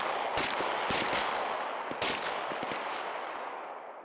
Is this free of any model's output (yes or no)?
yes